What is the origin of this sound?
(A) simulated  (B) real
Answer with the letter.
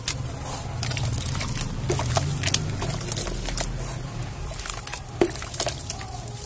B